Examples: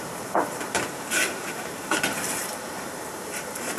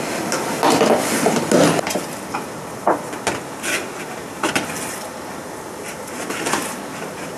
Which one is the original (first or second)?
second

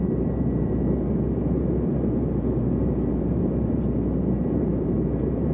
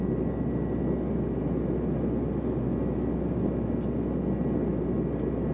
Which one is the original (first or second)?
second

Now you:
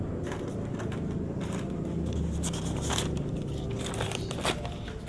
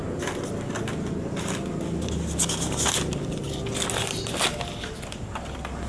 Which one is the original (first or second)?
second